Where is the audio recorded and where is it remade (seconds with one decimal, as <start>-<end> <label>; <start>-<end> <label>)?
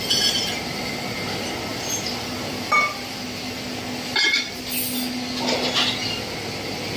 0.0-1.7 recorded; 1.7-3.6 remade; 3.6-7.0 recorded